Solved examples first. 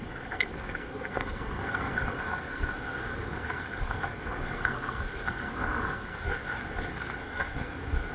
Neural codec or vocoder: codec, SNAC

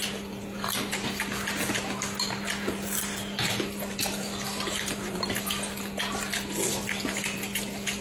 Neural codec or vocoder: none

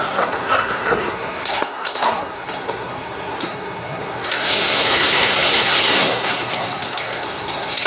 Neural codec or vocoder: codec, SNAC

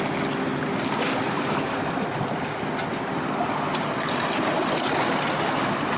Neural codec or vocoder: none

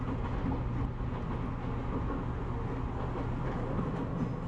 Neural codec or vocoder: none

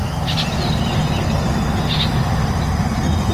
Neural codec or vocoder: none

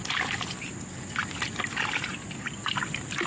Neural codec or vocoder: none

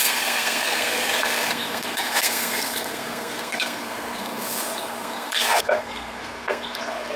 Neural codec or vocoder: codec, SNAC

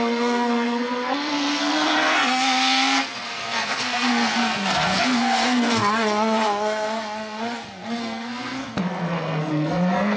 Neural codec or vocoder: codec, SNAC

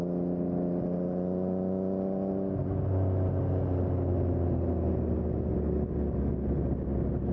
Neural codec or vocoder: none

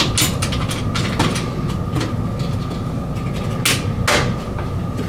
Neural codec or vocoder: none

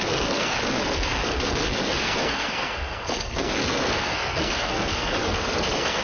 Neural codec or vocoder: codec, SNAC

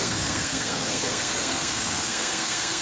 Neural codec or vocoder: codec, SNAC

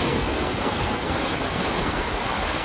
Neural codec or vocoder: codec, SNAC